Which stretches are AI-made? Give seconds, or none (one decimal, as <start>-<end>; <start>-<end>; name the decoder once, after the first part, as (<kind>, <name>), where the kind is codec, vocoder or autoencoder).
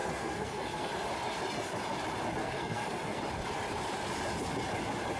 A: 0.0-0.9 (codec, SNAC); 2.4-3.2